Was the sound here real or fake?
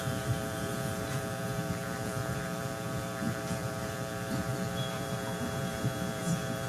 fake